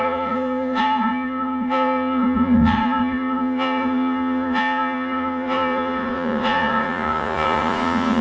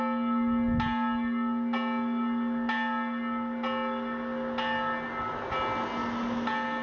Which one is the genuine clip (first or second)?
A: second